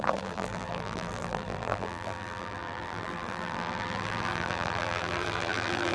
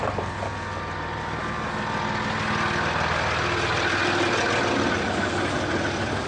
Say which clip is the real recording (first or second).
second